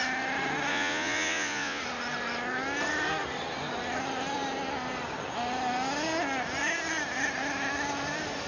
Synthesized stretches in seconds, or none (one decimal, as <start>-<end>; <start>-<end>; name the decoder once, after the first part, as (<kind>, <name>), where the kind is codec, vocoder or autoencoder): 0.7-1.8 (vocoder, Vocos)